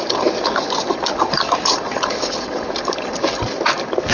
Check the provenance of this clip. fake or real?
real